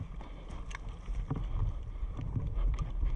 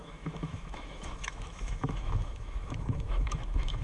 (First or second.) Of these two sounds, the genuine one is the first